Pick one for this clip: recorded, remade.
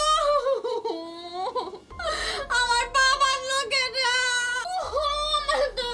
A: recorded